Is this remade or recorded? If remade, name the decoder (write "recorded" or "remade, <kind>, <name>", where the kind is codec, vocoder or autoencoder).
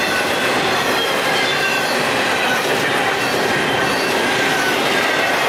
recorded